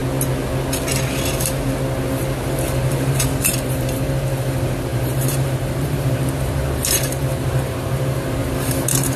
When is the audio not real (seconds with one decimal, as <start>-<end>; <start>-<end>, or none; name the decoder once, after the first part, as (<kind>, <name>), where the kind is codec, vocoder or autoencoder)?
2.5-9.2 (vocoder, BigVGAN v2)